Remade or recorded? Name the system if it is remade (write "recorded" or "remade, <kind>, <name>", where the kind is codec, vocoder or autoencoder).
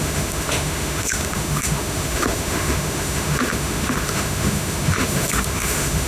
remade, autoencoder, DAC-VAE